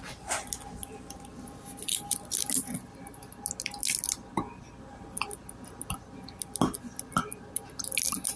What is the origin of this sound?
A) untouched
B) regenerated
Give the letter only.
A